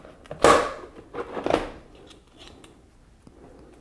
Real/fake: real